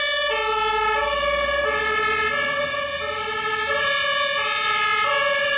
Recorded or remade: recorded